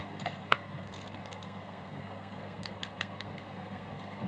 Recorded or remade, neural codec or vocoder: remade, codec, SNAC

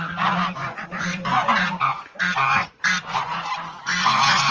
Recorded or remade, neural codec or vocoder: remade, vocoder, Vocos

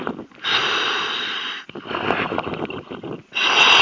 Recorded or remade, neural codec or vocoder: recorded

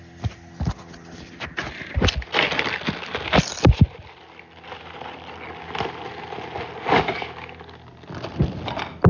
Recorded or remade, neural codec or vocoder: recorded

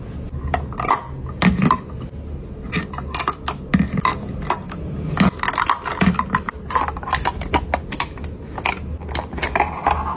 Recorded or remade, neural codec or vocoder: recorded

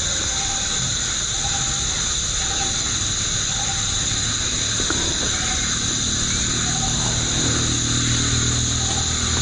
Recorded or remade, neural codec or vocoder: recorded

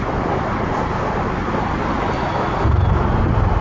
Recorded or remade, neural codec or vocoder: recorded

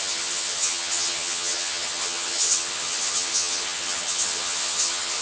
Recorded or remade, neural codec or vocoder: remade, vocoder, HiFi-GAN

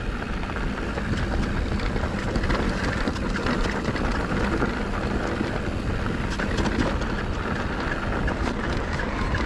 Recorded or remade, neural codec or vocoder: recorded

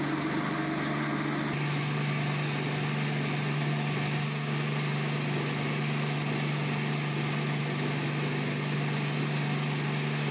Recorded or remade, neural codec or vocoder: recorded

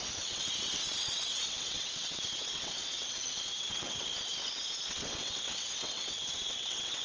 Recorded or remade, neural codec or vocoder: remade, vocoder, WaveNeXt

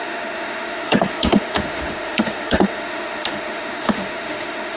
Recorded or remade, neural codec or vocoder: remade, autoencoder, DAC-VAE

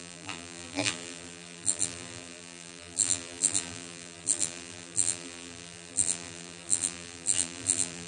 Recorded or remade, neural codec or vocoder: remade, vocoder, BigVGAN v2